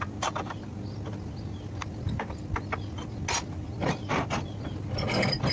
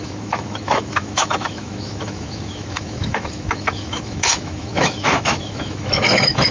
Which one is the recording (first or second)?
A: first